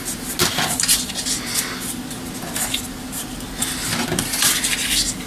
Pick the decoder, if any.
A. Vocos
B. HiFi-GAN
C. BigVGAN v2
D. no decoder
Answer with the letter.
D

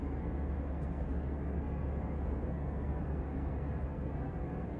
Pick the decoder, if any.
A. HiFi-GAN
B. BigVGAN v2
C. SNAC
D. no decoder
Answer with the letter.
C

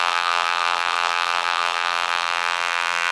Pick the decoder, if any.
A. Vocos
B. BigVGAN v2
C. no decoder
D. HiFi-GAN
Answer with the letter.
B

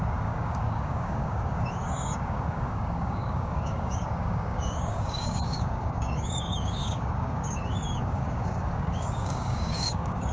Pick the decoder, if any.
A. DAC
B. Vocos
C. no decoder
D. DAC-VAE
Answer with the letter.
A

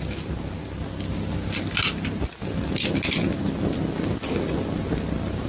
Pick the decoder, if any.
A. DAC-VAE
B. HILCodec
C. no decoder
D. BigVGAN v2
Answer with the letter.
C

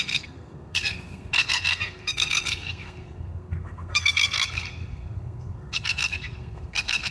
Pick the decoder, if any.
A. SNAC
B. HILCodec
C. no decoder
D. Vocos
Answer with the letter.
A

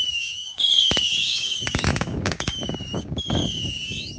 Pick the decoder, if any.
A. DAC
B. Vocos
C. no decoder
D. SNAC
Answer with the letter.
A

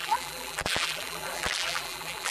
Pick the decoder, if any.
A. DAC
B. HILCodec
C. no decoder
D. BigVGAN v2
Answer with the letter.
D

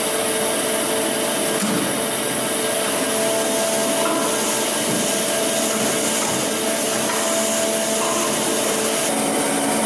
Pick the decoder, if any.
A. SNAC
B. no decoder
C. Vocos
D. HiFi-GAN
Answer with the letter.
B